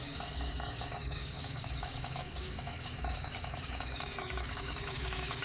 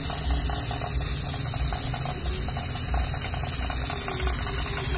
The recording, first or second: second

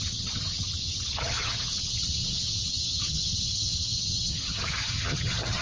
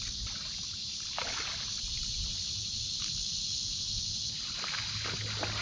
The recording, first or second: second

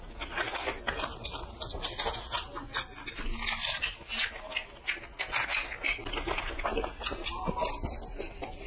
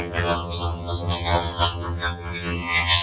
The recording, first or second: first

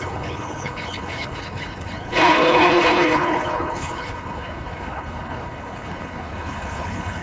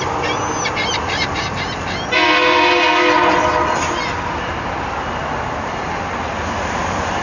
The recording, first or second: second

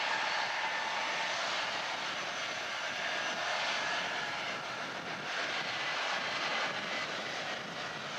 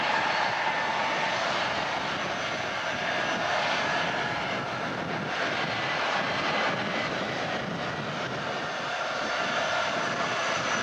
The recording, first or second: second